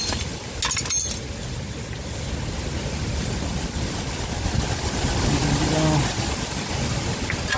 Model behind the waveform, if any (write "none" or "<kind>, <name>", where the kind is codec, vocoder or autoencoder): none